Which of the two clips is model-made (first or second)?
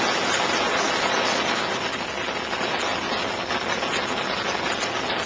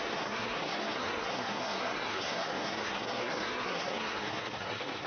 second